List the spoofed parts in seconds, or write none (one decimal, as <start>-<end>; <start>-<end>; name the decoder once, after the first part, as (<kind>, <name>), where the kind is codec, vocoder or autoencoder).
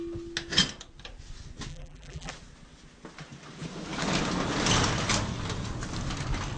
1.7-2.3 (vocoder, BigVGAN v2)